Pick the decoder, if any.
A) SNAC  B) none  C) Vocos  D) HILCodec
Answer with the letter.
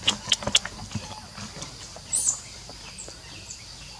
B